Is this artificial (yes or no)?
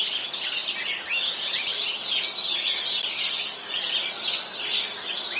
no